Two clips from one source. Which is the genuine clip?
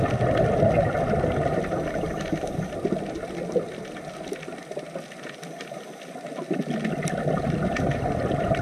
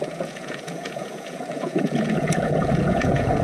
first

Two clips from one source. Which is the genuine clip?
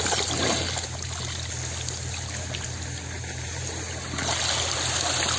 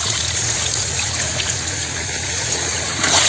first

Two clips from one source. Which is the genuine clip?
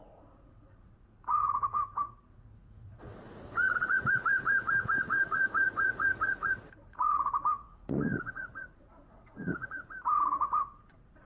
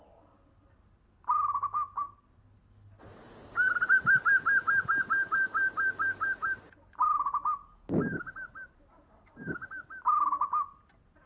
second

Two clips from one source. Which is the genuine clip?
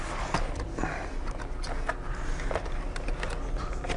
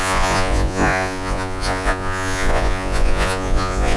first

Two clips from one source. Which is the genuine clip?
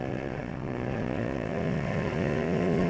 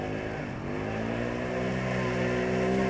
second